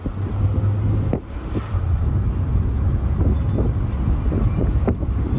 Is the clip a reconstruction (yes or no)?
no